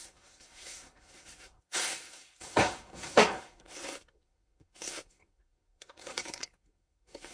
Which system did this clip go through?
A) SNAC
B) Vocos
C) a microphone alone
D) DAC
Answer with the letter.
A